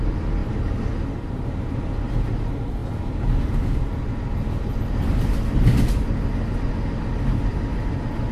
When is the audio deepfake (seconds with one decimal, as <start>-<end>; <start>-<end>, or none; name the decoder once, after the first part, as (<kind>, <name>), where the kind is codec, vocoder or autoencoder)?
0.4-2.0 (vocoder, BigVGAN v2)